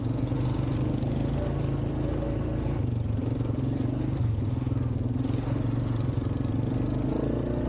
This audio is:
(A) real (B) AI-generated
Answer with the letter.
A